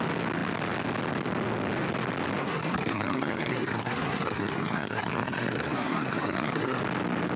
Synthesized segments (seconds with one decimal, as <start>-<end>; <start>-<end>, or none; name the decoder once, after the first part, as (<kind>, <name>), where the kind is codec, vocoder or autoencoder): 2.4-6.8 (codec, SNAC)

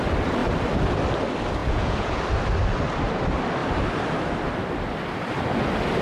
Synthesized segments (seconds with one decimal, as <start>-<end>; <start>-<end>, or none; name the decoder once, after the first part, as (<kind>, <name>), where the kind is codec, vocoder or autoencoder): 1.6-2.2 (vocoder, Vocos)

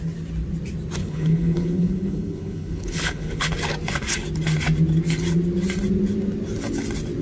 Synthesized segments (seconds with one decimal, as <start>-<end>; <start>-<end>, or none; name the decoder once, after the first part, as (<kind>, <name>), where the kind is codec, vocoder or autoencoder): 1.0-3.5 (codec, HILCodec)

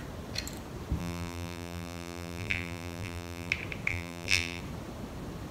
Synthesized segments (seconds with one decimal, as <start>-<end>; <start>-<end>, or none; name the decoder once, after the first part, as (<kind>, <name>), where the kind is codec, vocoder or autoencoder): 1.0-3.5 (vocoder, BigVGAN v2); 3.9-4.6

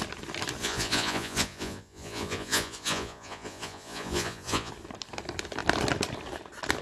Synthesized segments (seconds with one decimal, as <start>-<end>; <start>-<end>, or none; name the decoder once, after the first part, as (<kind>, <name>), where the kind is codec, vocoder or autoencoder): 0.6-4.7 (vocoder, Vocos)

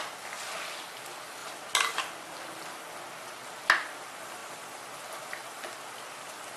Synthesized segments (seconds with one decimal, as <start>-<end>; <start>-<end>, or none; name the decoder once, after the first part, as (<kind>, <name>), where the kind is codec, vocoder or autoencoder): none

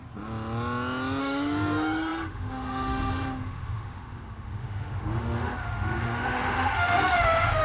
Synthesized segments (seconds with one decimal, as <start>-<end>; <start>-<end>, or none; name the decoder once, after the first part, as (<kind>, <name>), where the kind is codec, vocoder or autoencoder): 1.2-7.6 (autoencoder, DAC-VAE)

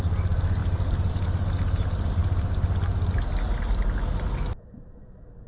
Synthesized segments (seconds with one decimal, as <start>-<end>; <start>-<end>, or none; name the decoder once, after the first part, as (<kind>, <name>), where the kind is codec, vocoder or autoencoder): none